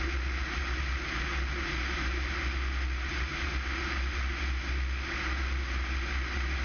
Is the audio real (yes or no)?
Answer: yes